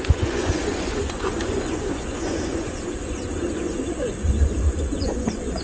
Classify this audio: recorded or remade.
remade